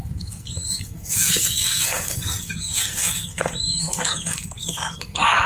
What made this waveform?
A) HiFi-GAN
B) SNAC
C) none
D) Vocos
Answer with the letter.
B